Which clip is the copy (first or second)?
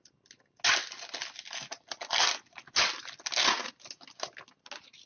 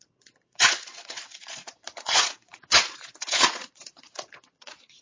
second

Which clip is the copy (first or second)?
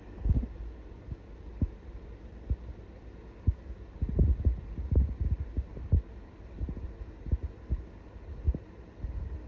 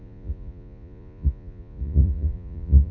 second